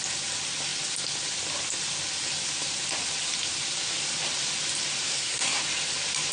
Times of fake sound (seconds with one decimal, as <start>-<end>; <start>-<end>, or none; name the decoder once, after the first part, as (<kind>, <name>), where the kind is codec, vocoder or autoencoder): 5.0-5.6 (codec, SNAC)